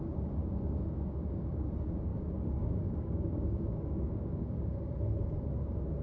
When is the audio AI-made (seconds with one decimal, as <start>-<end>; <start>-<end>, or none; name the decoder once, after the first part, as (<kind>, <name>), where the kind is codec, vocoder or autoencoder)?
0.4-1.7 (codec, DAC); 2.1-4.9